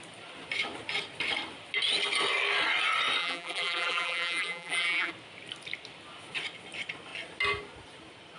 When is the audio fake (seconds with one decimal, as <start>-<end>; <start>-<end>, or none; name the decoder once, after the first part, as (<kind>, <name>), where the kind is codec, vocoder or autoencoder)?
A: 3.2-5.1 (vocoder, BigVGAN v2)